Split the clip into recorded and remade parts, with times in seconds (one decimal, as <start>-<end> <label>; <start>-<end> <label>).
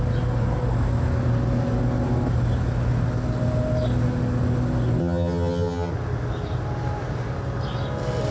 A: 0.0-5.0 recorded; 5.0-5.9 remade; 5.9-8.3 recorded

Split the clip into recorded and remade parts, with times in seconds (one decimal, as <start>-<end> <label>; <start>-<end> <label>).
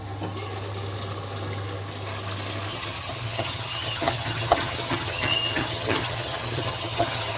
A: 0.0-2.7 recorded; 2.7-7.4 remade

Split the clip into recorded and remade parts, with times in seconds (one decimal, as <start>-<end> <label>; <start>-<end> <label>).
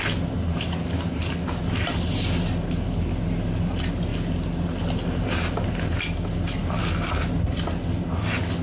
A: 0.0-8.6 recorded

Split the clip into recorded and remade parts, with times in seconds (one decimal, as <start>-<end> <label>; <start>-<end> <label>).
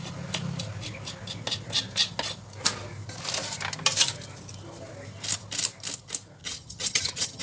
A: 0.0-6.4 recorded; 6.4-7.4 remade